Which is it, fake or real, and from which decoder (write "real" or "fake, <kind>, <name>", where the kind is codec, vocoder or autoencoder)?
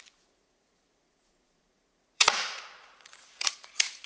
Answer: fake, vocoder, Vocos